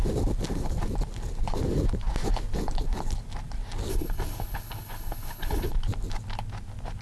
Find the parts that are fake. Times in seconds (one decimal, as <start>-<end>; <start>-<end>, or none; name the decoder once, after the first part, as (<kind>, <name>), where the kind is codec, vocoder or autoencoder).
3.9-5.7 (codec, HILCodec)

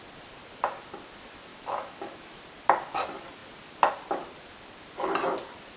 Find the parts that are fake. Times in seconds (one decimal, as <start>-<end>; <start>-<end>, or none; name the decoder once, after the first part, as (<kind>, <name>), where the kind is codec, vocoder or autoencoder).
1.5-2.4 (autoencoder, DAC-VAE)

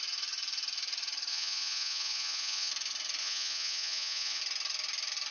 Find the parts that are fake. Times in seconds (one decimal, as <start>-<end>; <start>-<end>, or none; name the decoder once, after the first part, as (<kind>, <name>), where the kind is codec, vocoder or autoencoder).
1.3-2.7 (vocoder, Vocos); 3.2-4.4

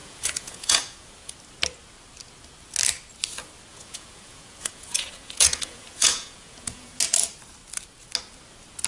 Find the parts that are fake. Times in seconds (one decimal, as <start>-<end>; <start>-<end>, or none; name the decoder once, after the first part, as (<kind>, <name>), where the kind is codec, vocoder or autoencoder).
0.0-1.3 (vocoder, Vocos); 3.7-7.0

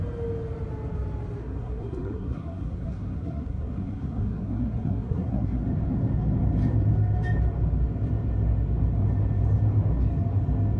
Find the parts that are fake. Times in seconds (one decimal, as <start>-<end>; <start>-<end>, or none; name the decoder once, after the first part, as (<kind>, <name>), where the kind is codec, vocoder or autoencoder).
1.4-5.6 (codec, SNAC)